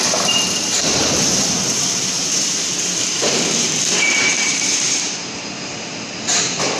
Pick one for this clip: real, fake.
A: fake